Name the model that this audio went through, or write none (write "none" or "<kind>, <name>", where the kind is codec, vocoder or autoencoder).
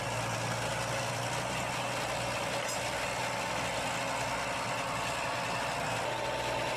none